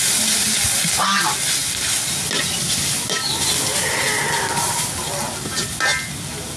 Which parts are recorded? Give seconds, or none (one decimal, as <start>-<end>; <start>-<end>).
0.0-6.6